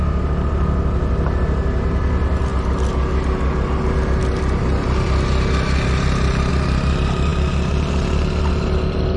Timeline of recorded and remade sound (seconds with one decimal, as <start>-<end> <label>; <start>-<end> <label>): 0.0-9.2 recorded